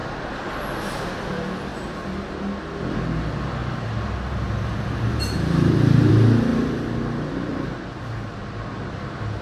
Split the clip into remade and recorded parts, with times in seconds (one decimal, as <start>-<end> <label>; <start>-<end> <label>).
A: 0.0-1.1 remade; 1.1-1.7 recorded; 1.7-2.4 remade; 2.4-3.6 recorded; 3.6-6.1 remade; 6.1-9.4 recorded